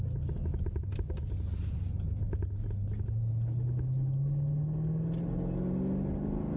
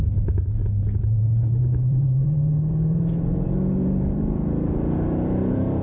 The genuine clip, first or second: first